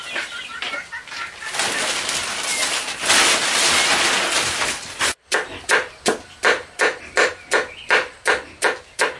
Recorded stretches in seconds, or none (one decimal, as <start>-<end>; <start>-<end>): 0.0-9.2